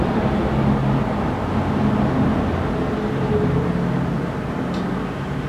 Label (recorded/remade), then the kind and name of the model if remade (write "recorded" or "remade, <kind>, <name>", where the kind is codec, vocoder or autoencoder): recorded